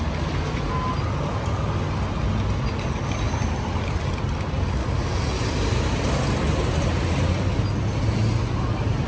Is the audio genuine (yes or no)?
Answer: yes